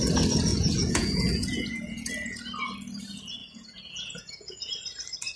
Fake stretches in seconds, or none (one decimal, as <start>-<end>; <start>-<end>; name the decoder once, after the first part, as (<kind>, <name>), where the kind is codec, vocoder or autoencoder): 0.5-2.1 (vocoder, Vocos); 3.4-4.7